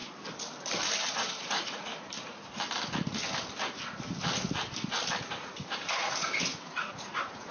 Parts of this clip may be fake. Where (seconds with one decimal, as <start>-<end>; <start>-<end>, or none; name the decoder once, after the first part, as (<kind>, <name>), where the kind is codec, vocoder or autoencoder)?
1.1-1.9 (vocoder, Vocos); 5.3-7.5